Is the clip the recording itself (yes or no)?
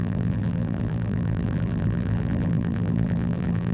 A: no